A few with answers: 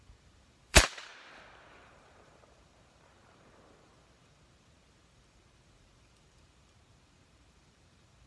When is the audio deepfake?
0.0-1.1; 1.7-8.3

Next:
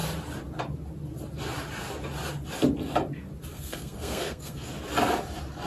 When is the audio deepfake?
3.5-4.7